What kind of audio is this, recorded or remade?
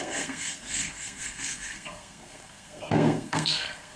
remade